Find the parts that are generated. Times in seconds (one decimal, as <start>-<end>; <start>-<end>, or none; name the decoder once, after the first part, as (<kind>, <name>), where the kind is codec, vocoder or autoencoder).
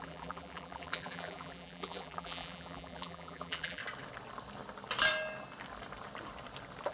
0.0-3.8 (vocoder, BigVGAN v2)